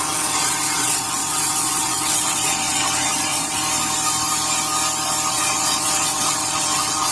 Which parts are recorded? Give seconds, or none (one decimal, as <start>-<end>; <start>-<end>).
3.6-5.3